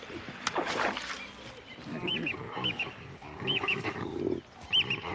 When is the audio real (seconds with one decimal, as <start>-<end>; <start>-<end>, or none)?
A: 0.0-1.9; 4.2-5.1